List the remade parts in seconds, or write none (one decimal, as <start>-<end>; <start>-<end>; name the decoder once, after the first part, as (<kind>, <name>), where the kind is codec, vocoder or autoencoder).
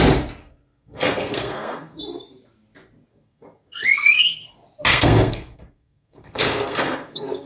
0.4-2.0 (codec, SNAC); 3.1-4.5; 4.9-7.5